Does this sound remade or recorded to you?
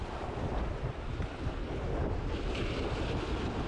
recorded